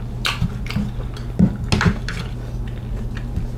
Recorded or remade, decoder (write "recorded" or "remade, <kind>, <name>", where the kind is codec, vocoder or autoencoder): recorded